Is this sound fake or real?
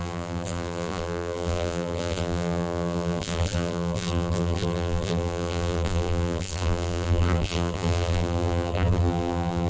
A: fake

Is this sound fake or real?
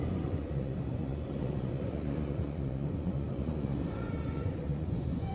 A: fake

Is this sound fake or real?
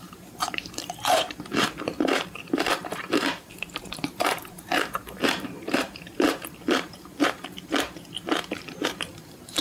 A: fake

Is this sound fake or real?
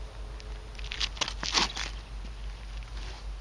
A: real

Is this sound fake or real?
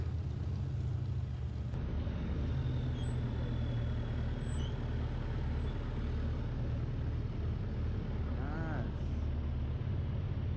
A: real